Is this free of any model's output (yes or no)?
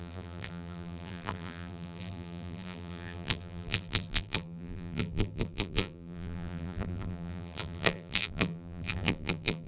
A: no